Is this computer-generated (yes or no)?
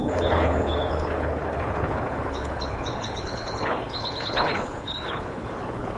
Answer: yes